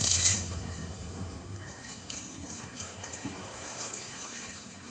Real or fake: fake